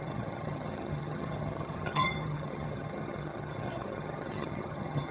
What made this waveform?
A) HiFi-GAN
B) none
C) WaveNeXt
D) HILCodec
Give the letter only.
A